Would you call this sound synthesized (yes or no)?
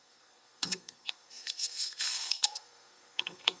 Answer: yes